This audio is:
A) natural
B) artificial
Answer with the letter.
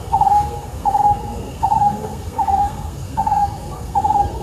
B